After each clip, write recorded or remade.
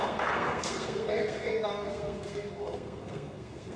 remade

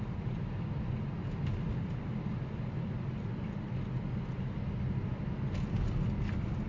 recorded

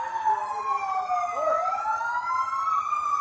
recorded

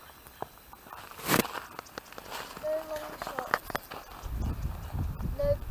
recorded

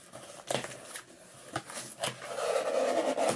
recorded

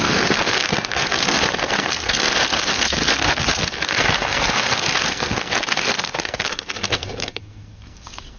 remade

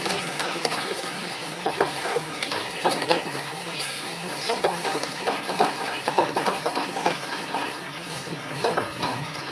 remade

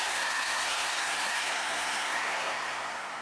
remade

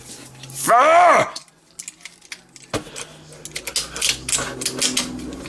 recorded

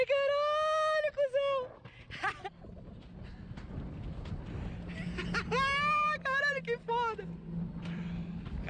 recorded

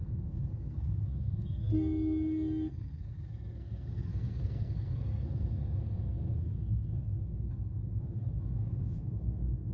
remade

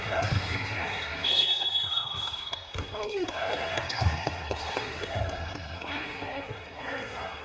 remade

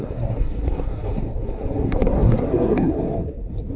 remade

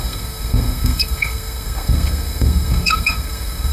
remade